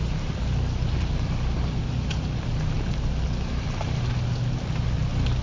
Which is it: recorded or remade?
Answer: recorded